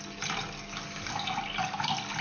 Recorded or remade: recorded